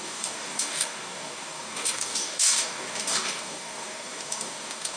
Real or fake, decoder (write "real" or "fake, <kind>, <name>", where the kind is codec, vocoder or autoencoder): fake, codec, DAC